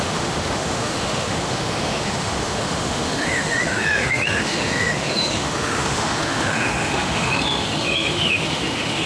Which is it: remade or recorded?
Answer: remade